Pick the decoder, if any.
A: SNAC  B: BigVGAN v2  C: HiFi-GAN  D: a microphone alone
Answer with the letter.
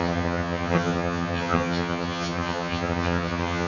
C